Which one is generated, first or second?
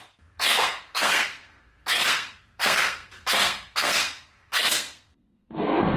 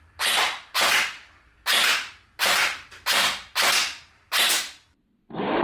first